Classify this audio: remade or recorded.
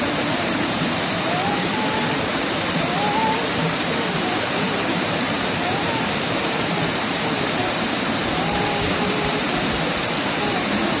remade